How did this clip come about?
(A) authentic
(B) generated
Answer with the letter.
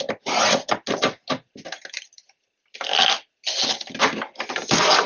A